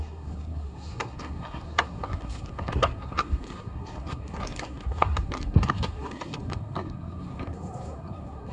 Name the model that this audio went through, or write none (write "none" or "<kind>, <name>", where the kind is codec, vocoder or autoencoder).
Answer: codec, SNAC